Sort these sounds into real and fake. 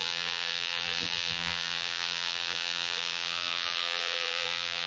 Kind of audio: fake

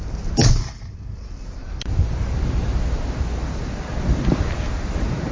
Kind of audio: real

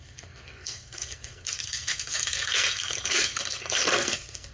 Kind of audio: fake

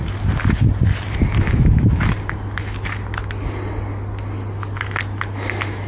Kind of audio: real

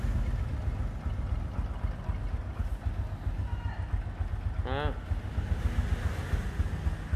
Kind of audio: real